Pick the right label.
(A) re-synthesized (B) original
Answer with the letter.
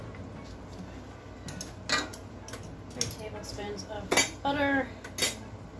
B